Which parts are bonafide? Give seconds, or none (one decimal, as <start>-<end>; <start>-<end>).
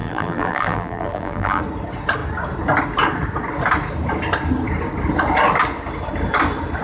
1.6-6.8